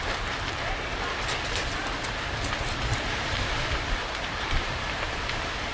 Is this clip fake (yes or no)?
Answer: yes